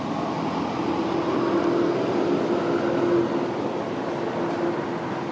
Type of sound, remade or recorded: recorded